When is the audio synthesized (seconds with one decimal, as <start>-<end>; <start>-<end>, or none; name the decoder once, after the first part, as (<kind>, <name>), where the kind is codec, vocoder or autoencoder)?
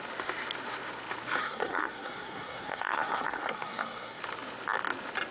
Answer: 1.4-4.2 (codec, SNAC)